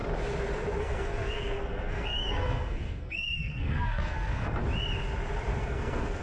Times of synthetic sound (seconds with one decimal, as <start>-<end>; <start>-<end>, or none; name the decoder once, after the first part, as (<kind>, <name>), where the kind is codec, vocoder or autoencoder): 0.8-4.6 (codec, SNAC); 5.6-6.2